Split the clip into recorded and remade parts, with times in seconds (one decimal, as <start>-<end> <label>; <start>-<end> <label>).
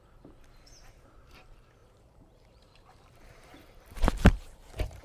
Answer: 0.0-1.8 recorded; 1.8-5.0 remade